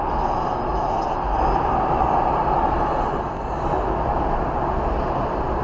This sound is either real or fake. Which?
real